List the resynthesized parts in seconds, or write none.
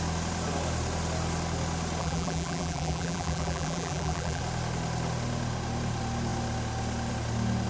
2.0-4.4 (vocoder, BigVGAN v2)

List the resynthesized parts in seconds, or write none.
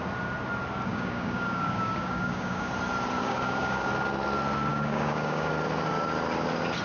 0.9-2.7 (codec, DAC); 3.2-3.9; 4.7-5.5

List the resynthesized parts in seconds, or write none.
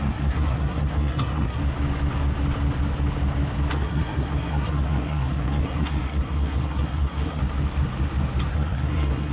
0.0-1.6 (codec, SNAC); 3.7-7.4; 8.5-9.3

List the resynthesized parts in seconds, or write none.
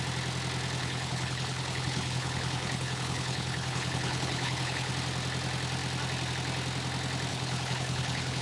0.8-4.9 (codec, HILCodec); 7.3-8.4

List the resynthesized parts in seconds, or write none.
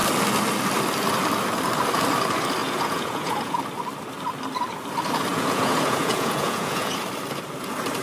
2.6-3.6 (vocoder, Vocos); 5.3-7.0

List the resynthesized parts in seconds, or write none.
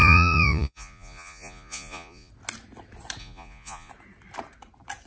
0.0-2.3 (vocoder, Vocos); 3.2-3.9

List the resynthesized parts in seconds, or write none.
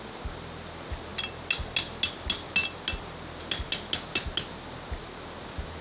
none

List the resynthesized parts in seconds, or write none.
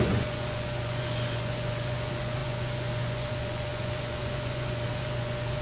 0.0-5.6 (vocoder, Vocos)